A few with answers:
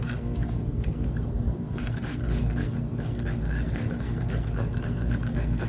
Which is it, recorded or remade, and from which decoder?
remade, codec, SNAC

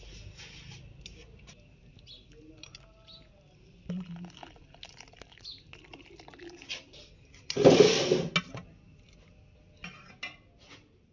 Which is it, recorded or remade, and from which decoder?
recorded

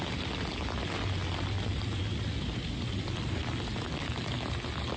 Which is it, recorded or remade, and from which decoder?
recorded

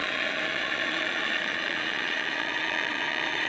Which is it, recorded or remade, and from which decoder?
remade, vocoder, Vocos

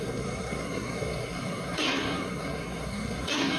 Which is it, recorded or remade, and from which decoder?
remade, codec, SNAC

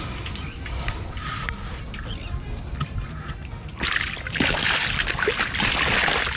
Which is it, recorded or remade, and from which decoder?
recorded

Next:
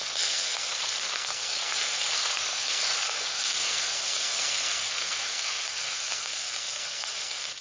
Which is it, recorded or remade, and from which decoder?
remade, codec, SNAC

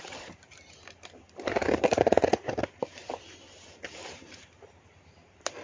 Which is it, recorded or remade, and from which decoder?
remade, vocoder, BigVGAN v2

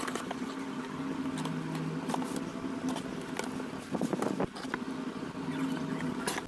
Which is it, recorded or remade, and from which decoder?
recorded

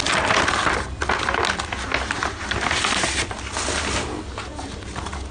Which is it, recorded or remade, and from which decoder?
recorded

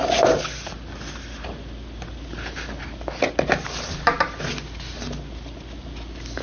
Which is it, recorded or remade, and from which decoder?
recorded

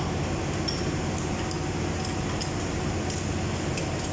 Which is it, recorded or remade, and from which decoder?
recorded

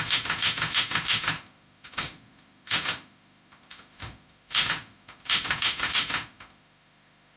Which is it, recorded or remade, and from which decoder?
remade, autoencoder, DAC-VAE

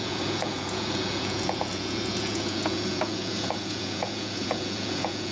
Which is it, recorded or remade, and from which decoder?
remade, vocoder, Vocos